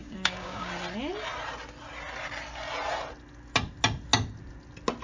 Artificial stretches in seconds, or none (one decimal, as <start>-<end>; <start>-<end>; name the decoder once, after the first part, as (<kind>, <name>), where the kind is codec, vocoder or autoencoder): 0.0-0.7 (codec, DAC)